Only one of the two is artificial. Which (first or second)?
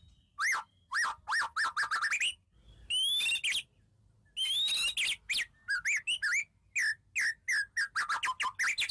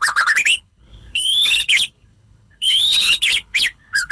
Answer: second